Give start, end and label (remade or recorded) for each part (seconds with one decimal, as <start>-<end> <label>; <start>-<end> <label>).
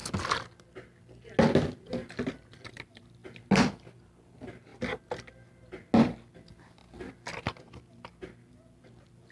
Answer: 0.0-9.3 recorded